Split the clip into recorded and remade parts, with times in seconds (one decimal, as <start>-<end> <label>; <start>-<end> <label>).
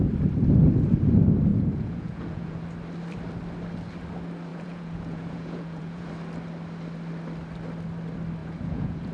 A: 0.0-1.5 recorded; 1.5-2.6 remade; 2.6-4.5 recorded; 4.5-6.1 remade; 6.1-8.4 recorded; 8.4-9.1 remade